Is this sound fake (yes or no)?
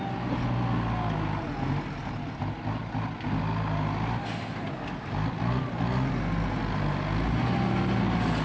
no